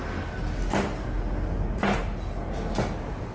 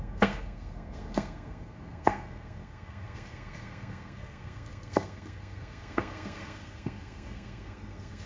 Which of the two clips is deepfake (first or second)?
second